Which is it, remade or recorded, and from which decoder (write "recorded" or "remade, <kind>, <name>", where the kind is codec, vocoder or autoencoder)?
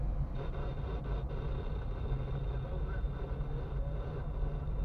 recorded